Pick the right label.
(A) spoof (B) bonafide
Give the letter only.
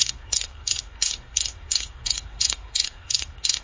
A